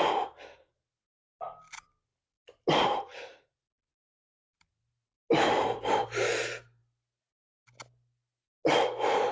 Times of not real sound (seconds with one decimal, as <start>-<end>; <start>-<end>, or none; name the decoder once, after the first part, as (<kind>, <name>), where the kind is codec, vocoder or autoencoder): none